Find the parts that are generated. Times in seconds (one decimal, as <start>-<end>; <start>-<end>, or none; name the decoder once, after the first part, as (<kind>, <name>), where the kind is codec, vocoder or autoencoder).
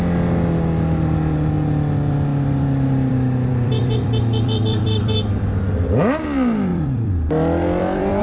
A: 2.3-3.1 (vocoder, BigVGAN v2); 3.5-5.4; 6.7-8.2